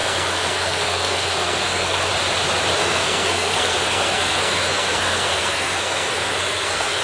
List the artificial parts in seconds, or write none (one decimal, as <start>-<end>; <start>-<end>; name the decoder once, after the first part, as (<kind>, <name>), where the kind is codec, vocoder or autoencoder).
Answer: 0.0-2.1 (codec, SNAC); 2.8-7.0